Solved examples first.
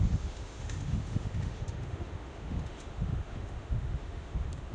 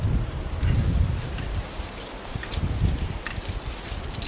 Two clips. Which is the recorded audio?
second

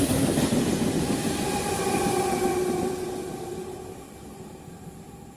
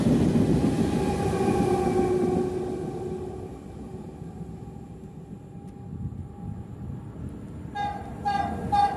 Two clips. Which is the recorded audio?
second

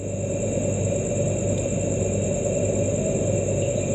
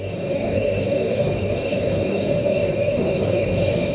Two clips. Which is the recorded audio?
first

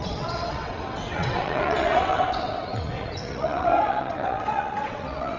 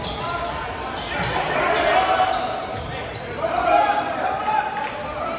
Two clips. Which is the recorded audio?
second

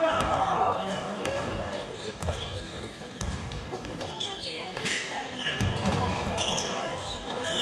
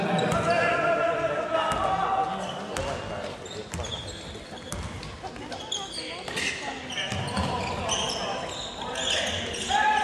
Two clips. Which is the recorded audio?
second